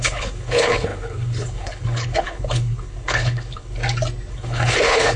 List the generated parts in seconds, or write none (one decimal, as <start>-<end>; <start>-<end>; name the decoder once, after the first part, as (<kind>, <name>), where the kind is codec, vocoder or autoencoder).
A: 0.0-3.8 (codec, HILCodec); 4.3-5.2